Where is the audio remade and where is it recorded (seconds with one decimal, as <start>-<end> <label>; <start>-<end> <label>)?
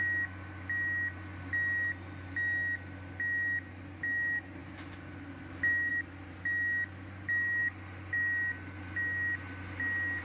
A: 0.0-10.2 recorded